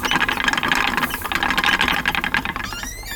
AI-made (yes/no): no